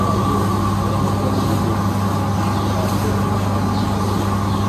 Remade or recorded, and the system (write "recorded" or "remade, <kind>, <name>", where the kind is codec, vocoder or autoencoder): recorded